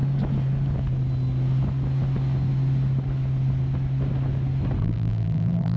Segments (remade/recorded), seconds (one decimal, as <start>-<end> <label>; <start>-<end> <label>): 0.0-4.8 recorded; 4.8-5.8 remade